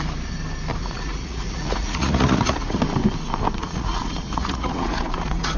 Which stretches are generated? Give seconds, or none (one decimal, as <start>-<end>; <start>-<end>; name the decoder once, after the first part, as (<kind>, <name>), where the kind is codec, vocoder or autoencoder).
0.8-2.8 (vocoder, Vocos); 3.6-5.6